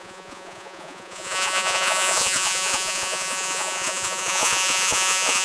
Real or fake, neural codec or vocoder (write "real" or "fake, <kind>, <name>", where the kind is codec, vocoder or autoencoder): fake, vocoder, Vocos